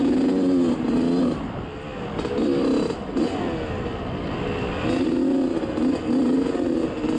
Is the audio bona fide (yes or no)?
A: yes